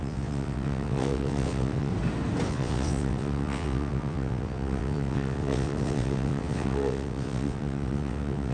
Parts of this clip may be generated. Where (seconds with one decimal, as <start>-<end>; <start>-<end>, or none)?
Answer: 0.0-1.9; 2.5-8.5